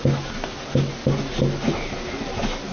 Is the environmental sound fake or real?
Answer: real